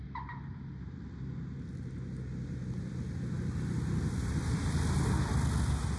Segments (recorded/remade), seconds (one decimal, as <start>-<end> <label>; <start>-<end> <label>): 0.0-6.0 recorded

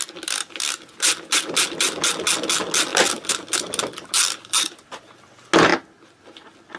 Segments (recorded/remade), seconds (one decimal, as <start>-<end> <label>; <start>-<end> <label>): 0.0-6.8 recorded

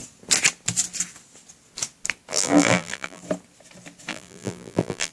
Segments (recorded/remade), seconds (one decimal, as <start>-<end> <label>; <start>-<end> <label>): 0.0-2.3 recorded; 2.3-3.2 remade; 3.2-4.1 recorded; 4.1-5.1 remade